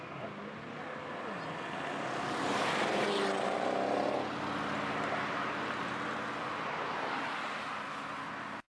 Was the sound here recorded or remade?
recorded